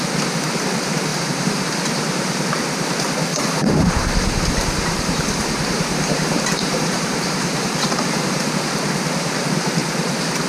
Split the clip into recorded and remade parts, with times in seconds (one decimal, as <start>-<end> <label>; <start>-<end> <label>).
0.0-1.1 recorded; 1.1-1.7 remade; 1.7-3.3 recorded; 3.3-8.5 remade; 8.5-10.5 recorded